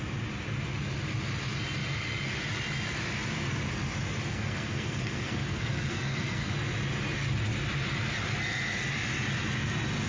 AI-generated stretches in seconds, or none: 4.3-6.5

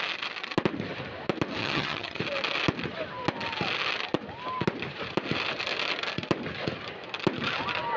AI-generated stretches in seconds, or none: 1.6-2.2

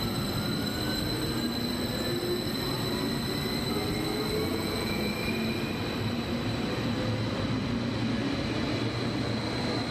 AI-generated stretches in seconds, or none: 4.5-5.1

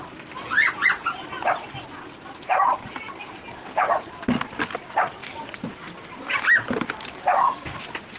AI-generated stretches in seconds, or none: none

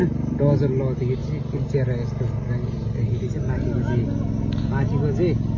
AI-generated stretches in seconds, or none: none